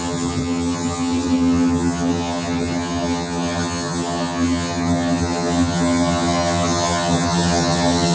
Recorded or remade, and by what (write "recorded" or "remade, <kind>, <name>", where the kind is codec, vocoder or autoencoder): remade, vocoder, HiFi-GAN